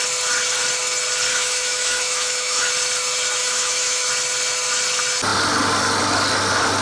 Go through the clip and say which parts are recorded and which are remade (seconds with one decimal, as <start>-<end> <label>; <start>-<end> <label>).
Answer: 0.0-1.3 recorded; 1.3-2.7 remade; 2.7-3.4 recorded; 3.4-4.1 remade; 4.1-6.8 recorded